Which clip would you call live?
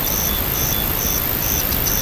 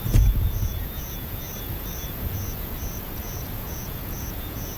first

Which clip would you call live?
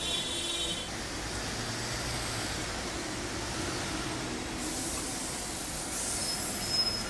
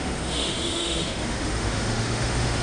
first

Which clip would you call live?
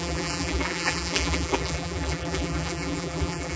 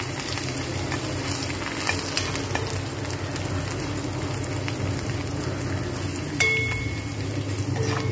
second